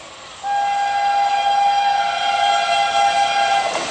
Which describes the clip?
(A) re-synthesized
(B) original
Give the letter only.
B